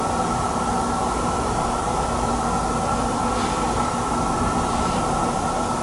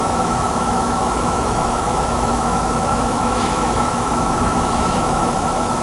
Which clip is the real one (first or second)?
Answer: first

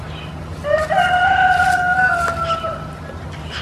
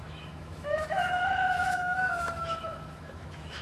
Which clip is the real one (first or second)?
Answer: first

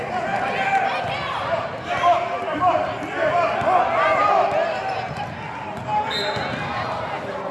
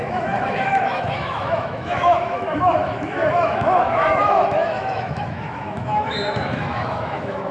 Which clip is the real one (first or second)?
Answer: first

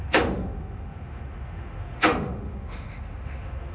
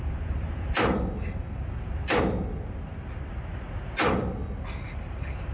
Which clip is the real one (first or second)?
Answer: second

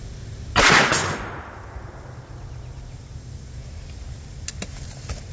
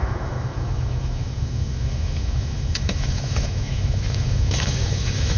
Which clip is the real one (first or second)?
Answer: first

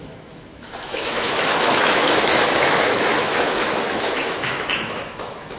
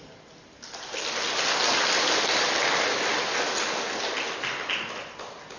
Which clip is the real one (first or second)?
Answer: second